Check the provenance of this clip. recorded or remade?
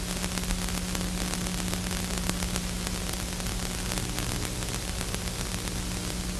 recorded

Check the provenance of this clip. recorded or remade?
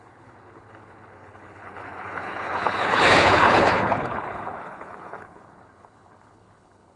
remade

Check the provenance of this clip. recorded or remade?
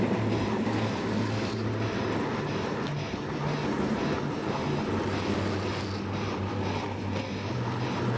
recorded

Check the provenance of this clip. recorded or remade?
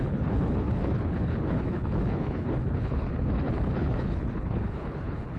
remade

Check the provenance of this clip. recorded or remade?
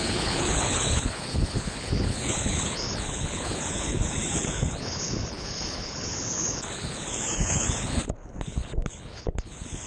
remade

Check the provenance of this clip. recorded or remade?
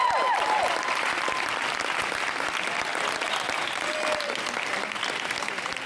recorded